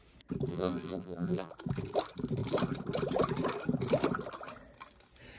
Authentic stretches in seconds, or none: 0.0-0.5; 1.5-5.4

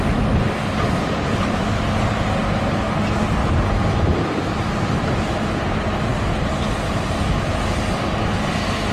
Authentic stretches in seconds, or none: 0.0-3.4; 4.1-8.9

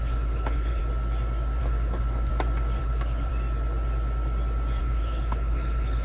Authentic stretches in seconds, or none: 0.8-1.6; 2.3-2.8; 3.3-4.8